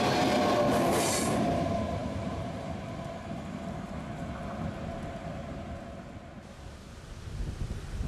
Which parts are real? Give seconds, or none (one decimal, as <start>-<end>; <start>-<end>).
0.0-2.0; 2.6-8.1

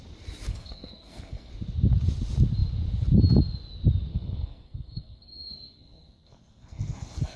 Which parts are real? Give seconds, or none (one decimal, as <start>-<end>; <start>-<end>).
0.0-0.5; 1.5-4.1

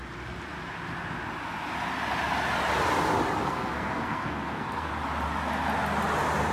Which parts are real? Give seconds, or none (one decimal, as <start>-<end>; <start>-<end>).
0.0-3.4; 4.9-6.5

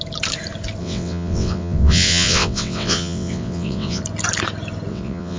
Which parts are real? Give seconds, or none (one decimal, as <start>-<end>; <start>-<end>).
0.0-0.8; 4.0-4.9

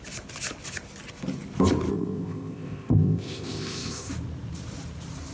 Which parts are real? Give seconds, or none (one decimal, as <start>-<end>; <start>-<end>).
0.0-1.9; 4.1-5.3

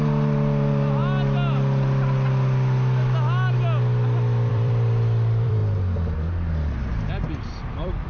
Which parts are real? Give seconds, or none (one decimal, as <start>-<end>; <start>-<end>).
1.0-4.5; 5.6-6.9

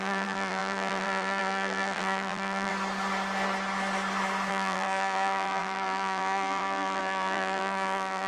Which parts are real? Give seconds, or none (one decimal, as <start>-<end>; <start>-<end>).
2.7-4.5